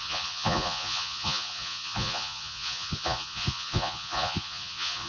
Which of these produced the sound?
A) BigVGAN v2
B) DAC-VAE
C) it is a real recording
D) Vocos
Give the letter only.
D